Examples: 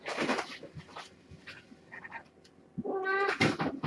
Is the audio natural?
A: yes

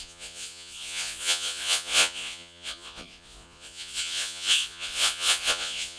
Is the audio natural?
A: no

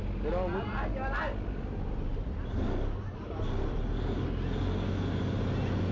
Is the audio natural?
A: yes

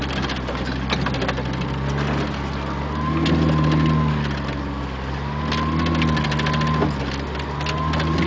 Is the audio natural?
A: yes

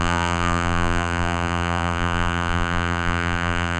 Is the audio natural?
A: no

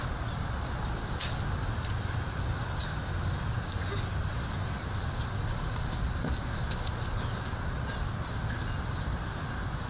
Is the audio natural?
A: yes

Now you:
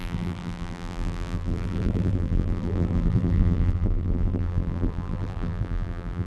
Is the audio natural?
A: no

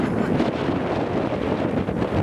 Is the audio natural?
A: yes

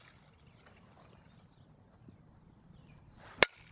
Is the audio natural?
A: yes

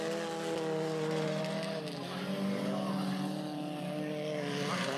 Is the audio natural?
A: yes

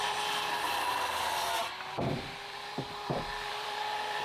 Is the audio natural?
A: no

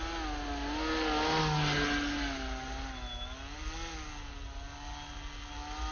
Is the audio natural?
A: yes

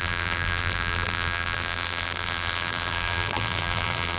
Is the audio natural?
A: no